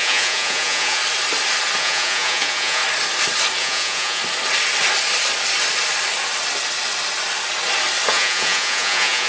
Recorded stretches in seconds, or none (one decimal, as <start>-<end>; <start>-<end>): 1.0-1.8; 2.8-3.6; 4.2-8.1